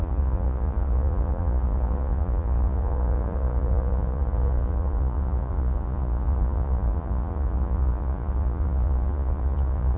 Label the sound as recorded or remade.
remade